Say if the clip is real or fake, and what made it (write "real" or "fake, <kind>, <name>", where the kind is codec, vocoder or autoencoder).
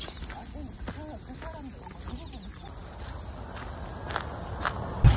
real